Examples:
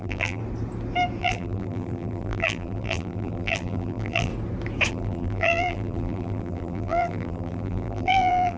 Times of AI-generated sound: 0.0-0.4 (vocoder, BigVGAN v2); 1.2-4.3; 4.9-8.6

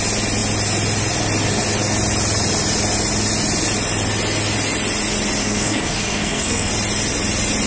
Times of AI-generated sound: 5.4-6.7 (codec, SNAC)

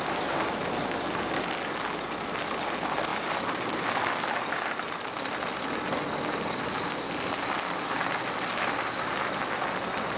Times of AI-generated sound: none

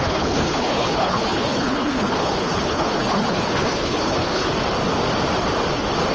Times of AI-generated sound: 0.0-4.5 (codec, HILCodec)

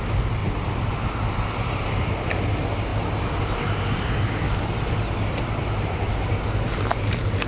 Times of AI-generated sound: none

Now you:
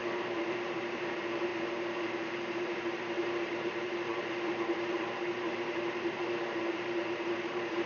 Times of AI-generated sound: 0.0-1.5 (vocoder, BigVGAN v2); 2.6-7.9